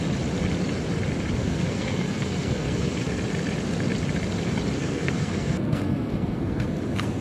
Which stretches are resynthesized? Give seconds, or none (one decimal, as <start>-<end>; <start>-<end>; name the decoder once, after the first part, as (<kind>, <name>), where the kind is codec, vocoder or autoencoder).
1.4-3.2 (codec, SNAC); 4.8-7.2